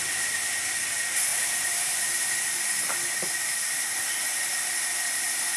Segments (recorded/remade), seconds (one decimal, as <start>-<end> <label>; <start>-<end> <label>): 0.0-1.3 recorded; 1.3-2.1 remade; 2.1-5.6 recorded